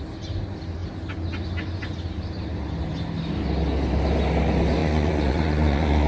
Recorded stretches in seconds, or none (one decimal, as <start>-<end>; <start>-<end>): 0.0-4.8